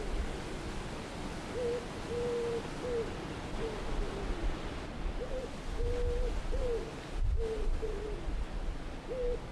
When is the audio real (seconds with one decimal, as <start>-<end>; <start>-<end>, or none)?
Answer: 0.0-9.5